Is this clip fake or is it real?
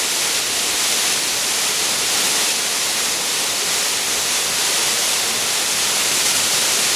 real